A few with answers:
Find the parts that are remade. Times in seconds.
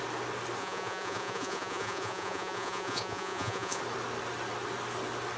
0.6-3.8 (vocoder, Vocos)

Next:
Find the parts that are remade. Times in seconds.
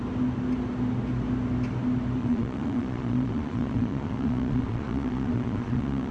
2.2-6.1 (vocoder, Vocos)